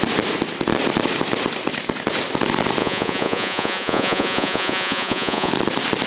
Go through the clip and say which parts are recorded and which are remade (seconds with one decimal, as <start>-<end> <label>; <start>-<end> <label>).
0.0-2.8 recorded; 2.8-5.5 remade; 5.5-6.1 recorded